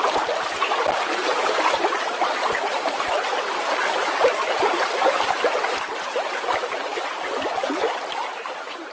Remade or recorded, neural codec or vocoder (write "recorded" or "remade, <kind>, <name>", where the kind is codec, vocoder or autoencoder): recorded